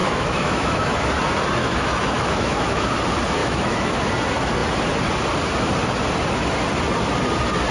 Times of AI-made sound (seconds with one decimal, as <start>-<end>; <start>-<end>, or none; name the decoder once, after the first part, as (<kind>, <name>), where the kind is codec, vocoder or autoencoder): 0.0-1.1 (autoencoder, DAC-VAE); 1.6-2.9; 3.4-4.1